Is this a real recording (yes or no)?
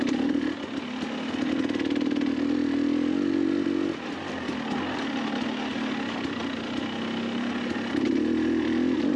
yes